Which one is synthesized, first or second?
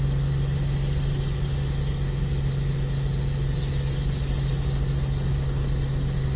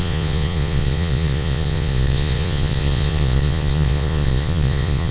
second